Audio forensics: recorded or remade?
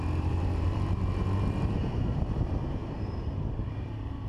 remade